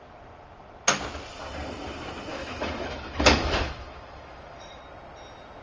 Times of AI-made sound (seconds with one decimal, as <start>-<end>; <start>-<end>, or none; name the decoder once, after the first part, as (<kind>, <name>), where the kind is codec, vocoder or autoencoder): 2.3-4.8 (autoencoder, DAC-VAE)